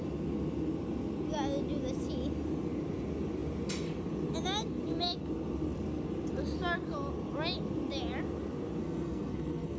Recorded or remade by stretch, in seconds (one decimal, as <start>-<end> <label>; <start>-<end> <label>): 0.0-8.8 recorded; 8.8-9.8 remade